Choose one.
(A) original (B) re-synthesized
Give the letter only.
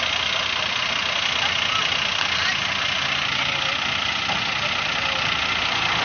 A